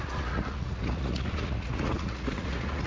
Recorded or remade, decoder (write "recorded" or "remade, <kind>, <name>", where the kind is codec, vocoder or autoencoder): remade, vocoder, Vocos